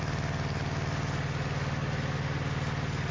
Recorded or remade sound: recorded